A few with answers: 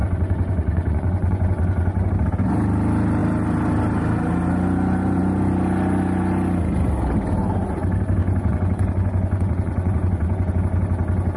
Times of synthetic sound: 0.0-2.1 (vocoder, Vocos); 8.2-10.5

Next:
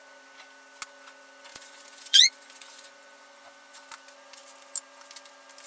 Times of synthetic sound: 1.5-3.8 (vocoder, Vocos)

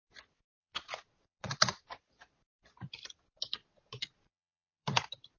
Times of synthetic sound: 0.6-2.0 (vocoder, Vocos); 3.6-5.0

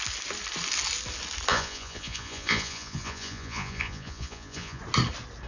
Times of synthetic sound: 1.5-4.8 (vocoder, Vocos)

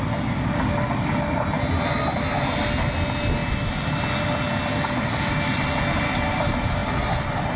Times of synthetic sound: none

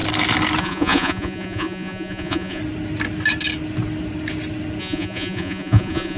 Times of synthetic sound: 0.6-2.6 (vocoder, Vocos); 4.8-6.2